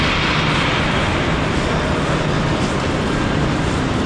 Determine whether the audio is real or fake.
real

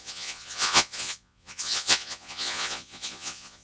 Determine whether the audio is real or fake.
fake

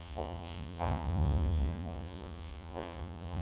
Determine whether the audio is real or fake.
fake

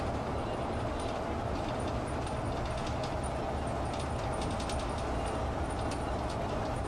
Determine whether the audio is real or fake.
real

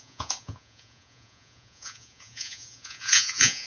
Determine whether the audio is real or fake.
fake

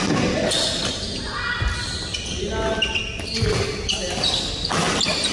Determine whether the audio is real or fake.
real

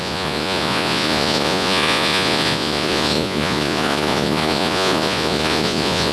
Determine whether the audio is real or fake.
fake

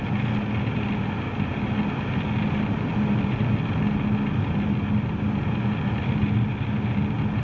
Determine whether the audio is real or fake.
real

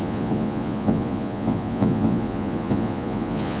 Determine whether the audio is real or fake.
fake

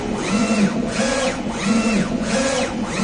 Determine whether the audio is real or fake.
fake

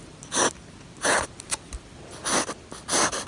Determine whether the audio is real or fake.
real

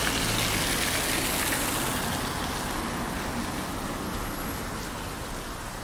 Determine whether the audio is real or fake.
real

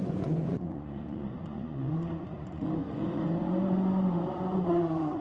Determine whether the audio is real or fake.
fake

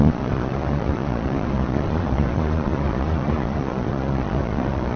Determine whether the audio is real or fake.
fake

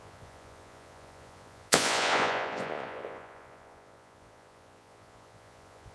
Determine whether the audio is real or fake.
fake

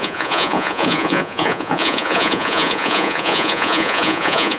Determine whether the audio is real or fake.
fake